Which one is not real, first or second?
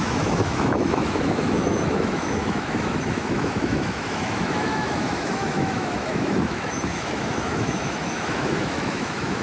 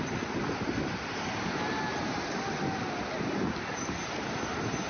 first